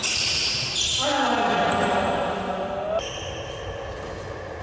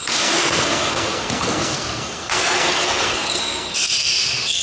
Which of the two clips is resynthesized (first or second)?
second